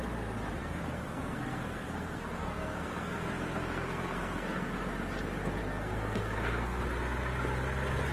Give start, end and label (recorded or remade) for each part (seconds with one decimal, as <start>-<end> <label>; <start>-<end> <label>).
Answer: 0.0-0.6 recorded; 0.6-4.7 remade; 4.7-5.6 recorded; 5.6-6.8 remade; 6.8-8.1 recorded